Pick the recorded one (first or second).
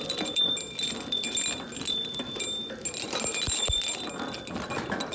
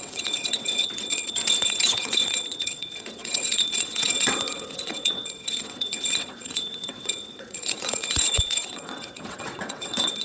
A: first